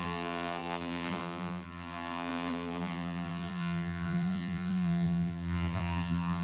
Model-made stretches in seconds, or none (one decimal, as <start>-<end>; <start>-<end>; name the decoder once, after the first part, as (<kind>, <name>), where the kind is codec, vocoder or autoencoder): 0.0-6.4 (vocoder, BigVGAN v2)